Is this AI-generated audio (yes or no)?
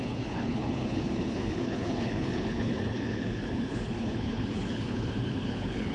yes